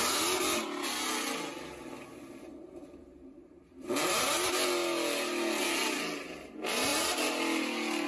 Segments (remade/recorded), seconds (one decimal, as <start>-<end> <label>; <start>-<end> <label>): 0.0-2.5 recorded; 2.5-4.2 remade; 4.2-8.1 recorded